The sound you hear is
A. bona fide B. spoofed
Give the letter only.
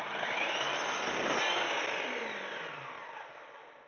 A